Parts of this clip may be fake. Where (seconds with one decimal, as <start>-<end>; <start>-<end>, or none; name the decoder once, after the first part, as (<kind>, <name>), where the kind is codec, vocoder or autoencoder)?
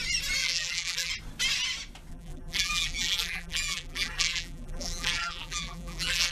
0.4-1.1 (vocoder, BigVGAN v2); 2.1-6.3